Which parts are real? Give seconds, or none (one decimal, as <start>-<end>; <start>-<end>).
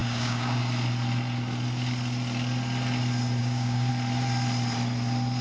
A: 0.6-3.4; 3.9-5.4